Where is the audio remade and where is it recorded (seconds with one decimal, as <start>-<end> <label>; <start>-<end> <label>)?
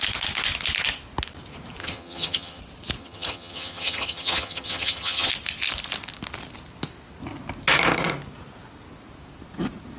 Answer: 0.0-1.8 recorded; 1.8-2.6 remade; 2.6-3.0 recorded; 3.0-5.3 remade; 5.3-10.0 recorded